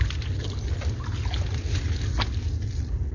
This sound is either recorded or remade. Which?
recorded